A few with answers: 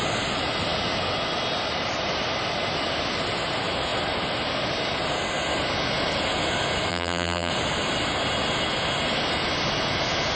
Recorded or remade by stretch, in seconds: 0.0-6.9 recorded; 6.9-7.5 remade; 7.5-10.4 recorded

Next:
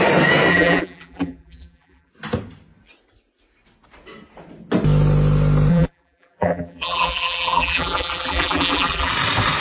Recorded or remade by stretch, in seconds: 0.0-0.5 recorded; 0.5-2.1 remade; 2.1-5.7 recorded; 5.7-9.1 remade; 9.1-9.6 recorded

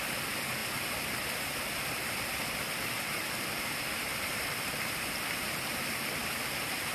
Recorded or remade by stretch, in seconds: 0.0-0.6 recorded; 0.6-2.8 remade; 2.8-4.1 recorded; 4.1-6.4 remade; 6.4-6.9 recorded

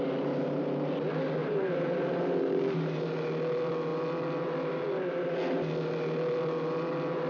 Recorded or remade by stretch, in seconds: 0.0-1.4 recorded; 1.4-3.2 remade; 3.2-7.3 recorded

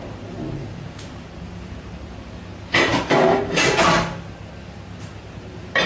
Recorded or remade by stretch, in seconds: 0.0-2.9 remade; 2.9-5.0 recorded; 5.0-5.9 remade

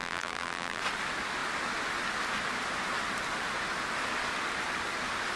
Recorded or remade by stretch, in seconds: 0.0-0.8 remade; 0.8-5.4 recorded

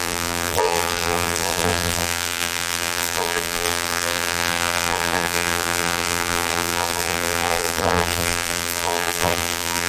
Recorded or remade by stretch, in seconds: 0.0-9.9 remade

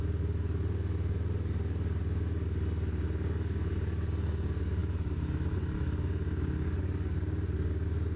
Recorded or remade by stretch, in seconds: 0.0-8.2 recorded